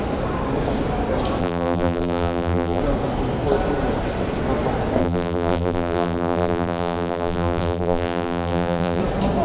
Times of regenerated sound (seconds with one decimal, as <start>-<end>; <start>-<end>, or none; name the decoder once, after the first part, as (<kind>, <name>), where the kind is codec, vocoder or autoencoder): 1.4-2.8 (vocoder, BigVGAN v2); 5.0-9.0